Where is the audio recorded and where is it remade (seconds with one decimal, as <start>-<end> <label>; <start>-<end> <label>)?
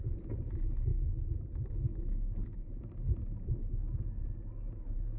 0.0-5.2 recorded